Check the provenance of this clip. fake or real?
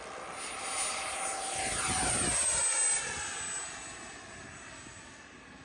real